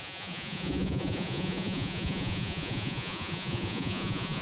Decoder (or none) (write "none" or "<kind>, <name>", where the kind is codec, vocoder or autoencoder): vocoder, Vocos